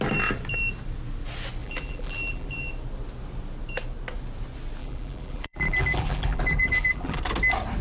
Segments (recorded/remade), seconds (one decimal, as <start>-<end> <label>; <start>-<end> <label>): 0.0-1.6 recorded; 1.6-2.7 remade; 2.7-4.8 recorded; 4.8-7.2 remade; 7.2-7.8 recorded